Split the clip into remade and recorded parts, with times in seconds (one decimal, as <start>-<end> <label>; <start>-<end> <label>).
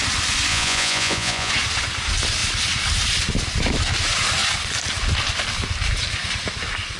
0.0-0.5 recorded; 0.5-1.5 remade; 1.5-7.0 recorded